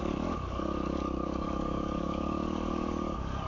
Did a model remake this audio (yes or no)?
yes